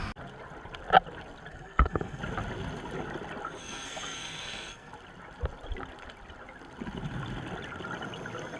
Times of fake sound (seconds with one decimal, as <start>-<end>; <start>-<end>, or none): 1.5-2.2; 3.6-4.9

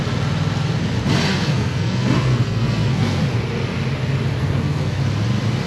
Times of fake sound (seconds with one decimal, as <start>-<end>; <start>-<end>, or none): 1.3-3.2; 4.4-5.0

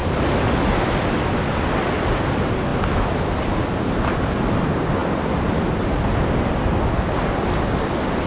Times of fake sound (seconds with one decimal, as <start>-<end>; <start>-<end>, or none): none

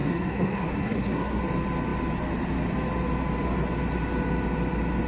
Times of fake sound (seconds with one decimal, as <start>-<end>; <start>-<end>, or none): 0.0-1.4

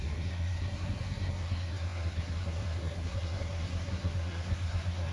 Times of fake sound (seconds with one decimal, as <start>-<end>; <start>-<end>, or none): 0.0-5.1

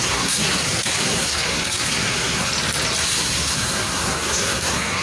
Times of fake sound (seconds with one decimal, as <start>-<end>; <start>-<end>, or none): 0.0-2.5; 3.0-5.0

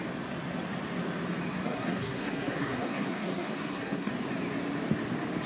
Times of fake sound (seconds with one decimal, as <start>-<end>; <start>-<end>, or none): 1.5-4.1